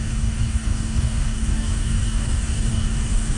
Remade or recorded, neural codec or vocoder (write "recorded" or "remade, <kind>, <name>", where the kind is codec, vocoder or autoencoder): remade, codec, DAC